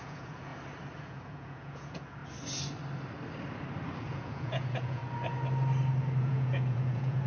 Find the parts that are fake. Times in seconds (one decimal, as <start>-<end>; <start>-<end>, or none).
0.0-0.5; 1.0-2.2; 4.0-5.0; 6.2-7.3